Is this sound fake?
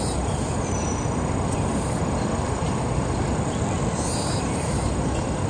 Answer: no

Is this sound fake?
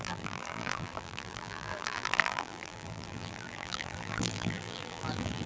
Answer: yes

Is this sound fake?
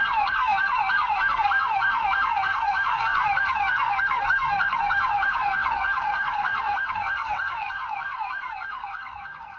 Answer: yes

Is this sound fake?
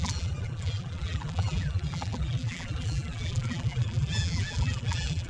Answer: yes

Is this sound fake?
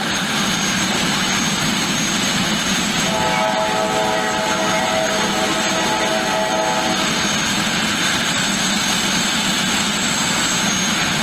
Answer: no